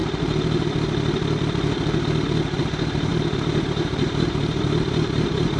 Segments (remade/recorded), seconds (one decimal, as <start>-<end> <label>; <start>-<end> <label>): 0.0-2.6 recorded; 2.6-5.6 remade